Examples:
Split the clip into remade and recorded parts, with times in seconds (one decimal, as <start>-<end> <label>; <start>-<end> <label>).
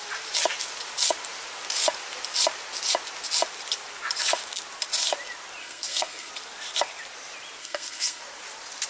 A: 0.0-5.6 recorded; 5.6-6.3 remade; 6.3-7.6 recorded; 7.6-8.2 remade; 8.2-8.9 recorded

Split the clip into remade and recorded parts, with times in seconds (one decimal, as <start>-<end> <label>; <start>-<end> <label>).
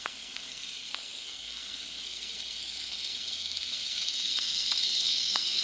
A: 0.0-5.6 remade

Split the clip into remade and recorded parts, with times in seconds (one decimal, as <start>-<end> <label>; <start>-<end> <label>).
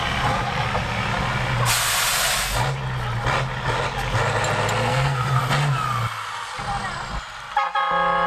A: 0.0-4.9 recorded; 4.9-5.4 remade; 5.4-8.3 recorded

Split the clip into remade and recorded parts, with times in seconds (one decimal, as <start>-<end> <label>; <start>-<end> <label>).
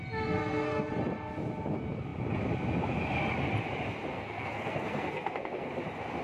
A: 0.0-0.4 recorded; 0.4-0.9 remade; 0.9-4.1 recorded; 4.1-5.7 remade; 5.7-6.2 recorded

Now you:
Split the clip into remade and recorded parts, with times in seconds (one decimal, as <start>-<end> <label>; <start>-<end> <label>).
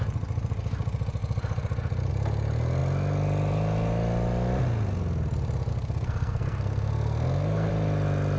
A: 0.0-5.7 recorded; 5.7-7.7 remade; 7.7-8.4 recorded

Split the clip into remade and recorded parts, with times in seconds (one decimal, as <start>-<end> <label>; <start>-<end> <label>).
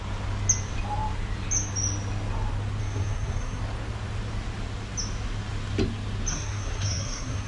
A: 0.0-2.8 recorded; 2.8-3.6 remade; 3.6-6.3 recorded; 6.3-7.5 remade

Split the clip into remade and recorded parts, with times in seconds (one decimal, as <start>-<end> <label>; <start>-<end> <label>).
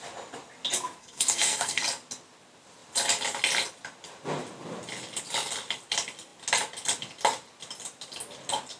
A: 0.0-1.0 recorded; 1.0-1.8 remade; 1.8-8.8 recorded